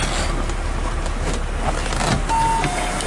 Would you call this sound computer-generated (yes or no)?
no